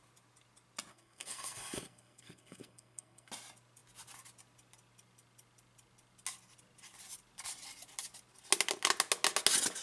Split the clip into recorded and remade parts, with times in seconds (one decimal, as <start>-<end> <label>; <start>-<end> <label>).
0.0-0.9 recorded; 0.9-3.3 remade; 3.3-9.8 recorded